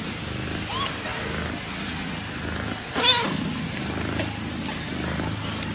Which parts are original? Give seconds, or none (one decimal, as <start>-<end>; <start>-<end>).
0.0-5.7